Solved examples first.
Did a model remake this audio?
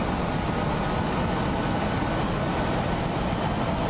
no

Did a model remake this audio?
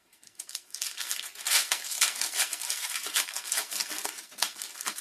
yes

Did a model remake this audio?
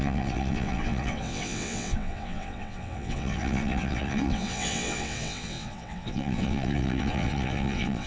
yes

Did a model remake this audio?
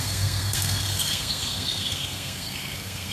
yes